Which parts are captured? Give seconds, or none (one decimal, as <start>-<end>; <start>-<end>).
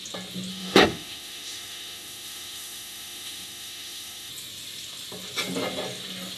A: 0.0-0.5; 4.3-6.4